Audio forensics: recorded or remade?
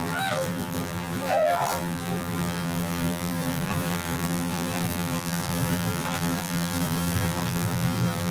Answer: remade